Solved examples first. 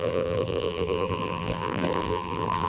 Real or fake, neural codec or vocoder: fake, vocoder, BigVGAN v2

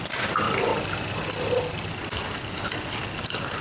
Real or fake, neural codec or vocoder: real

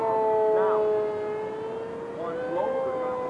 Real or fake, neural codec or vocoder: real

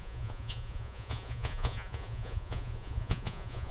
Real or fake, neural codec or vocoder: fake, vocoder, Vocos